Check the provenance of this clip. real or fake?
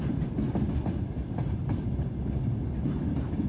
real